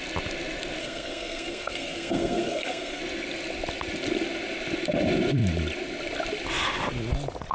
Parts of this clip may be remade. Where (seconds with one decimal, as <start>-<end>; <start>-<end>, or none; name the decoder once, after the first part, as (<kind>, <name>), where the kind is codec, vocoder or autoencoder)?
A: 0.8-3.0 (codec, SNAC)